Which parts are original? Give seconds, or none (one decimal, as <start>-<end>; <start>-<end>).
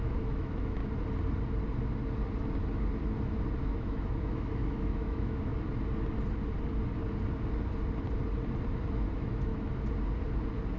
0.8-3.6; 5.5-9.1; 9.5-10.8